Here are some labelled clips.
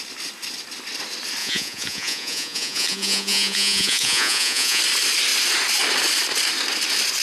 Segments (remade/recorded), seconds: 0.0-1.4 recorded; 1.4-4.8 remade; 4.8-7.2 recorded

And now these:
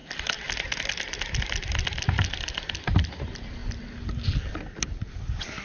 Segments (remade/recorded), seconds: 0.0-5.6 recorded

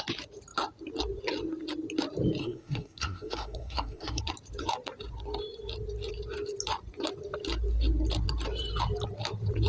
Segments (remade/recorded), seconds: 0.0-2.4 recorded; 2.4-4.2 remade; 4.2-9.7 recorded

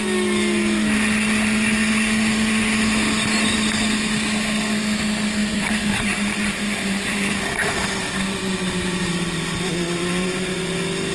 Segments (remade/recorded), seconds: 0.0-5.4 recorded; 5.4-10.6 remade; 10.6-11.1 recorded

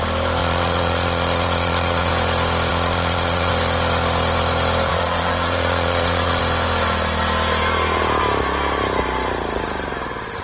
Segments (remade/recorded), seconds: 0.0-0.4 recorded; 0.4-2.1 remade; 2.1-2.7 recorded; 2.7-3.5 remade; 3.5-4.9 recorded; 4.9-6.4 remade; 6.4-10.4 recorded

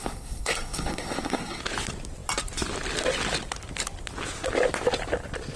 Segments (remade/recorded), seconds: 0.0-1.6 remade; 1.6-5.6 recorded